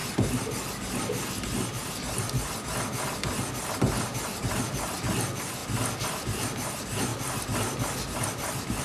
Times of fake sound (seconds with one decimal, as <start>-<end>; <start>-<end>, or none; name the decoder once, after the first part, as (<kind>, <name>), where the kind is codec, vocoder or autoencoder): none